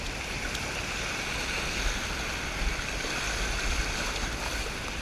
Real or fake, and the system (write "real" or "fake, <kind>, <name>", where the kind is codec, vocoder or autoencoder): real